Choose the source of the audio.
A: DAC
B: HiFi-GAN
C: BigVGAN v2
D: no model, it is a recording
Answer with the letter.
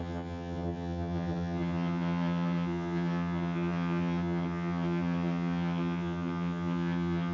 B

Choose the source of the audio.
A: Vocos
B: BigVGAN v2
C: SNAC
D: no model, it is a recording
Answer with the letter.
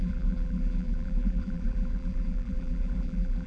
B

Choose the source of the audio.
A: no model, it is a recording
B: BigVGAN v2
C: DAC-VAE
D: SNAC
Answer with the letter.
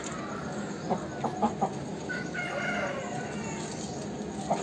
A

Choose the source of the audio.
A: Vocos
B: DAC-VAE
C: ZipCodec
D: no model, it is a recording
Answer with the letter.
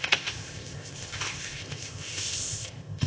C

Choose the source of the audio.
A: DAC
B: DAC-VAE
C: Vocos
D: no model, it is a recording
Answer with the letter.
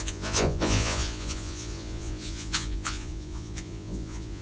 C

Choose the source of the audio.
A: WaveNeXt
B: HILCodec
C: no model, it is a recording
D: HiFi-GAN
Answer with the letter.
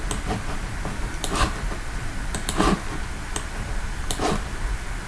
C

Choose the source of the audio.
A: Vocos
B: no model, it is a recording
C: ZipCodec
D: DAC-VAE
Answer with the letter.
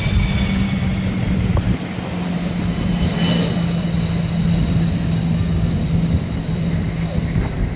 B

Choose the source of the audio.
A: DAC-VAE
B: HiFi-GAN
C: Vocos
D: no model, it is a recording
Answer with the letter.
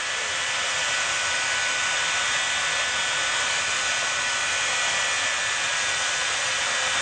D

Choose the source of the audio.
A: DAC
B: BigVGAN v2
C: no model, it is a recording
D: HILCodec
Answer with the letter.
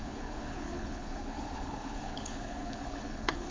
D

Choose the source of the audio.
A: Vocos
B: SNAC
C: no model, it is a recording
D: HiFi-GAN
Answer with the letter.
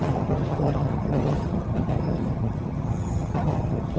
D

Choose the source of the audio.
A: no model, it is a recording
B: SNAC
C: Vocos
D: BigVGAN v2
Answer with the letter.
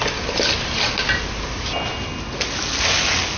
A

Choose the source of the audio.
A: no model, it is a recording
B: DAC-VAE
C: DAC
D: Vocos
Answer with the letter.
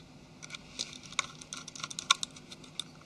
A